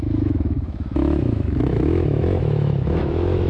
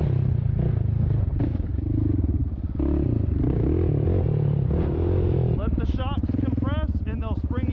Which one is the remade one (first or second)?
first